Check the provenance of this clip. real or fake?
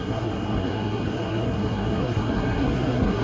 fake